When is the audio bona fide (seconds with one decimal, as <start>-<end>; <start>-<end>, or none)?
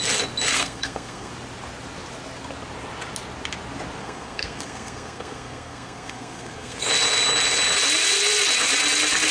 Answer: 0.0-0.5; 1.3-4.0; 6.9-9.3